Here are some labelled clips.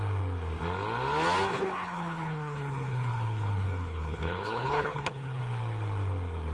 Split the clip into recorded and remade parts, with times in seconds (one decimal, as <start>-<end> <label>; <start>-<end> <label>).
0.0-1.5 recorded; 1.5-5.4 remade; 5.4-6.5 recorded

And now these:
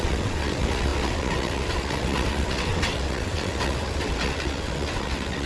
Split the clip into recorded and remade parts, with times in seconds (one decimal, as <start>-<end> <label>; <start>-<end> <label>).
0.0-5.5 remade

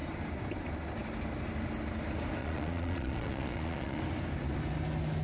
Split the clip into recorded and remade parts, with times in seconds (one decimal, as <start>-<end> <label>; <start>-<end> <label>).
0.0-2.4 recorded; 2.4-4.0 remade; 4.0-5.2 recorded

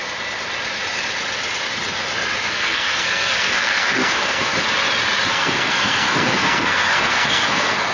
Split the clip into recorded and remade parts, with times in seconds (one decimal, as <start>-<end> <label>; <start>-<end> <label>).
0.0-2.5 recorded; 2.5-4.5 remade; 4.5-5.3 recorded; 5.3-7.9 remade

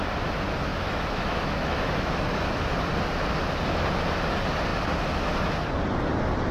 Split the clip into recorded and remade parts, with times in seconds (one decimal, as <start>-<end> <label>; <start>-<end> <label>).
0.0-0.7 recorded; 0.7-2.5 remade; 2.5-6.5 recorded

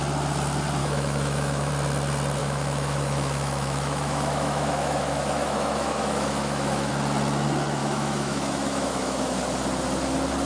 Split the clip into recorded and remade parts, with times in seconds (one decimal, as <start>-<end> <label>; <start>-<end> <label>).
0.0-0.8 recorded; 0.8-1.7 remade; 1.7-2.4 recorded; 2.4-6.9 remade; 6.9-7.8 recorded; 7.8-9.4 remade; 9.4-10.5 recorded

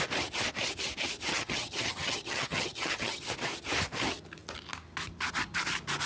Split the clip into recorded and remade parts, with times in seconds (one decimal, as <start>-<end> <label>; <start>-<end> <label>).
0.0-1.3 recorded; 1.3-3.2 remade; 3.2-6.1 recorded